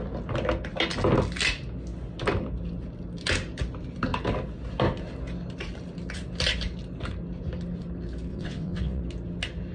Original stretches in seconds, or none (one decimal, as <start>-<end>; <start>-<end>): 0.0-8.3; 9.0-9.7

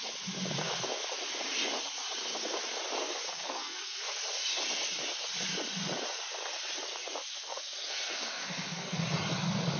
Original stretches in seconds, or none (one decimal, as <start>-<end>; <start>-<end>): 0.0-3.0; 4.1-7.3; 9.0-9.8

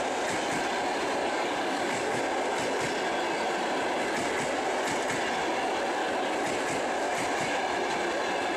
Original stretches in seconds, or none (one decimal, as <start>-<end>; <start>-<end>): 0.0-1.2; 2.2-8.6

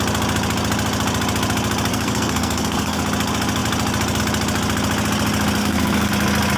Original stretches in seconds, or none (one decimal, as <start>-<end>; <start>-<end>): 0.0-1.9; 3.0-5.6; 6.1-6.6